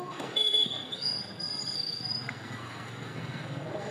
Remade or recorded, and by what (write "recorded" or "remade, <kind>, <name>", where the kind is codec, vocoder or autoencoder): remade, codec, SNAC